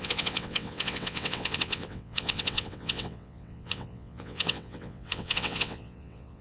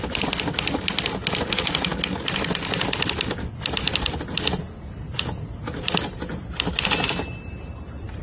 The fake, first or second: first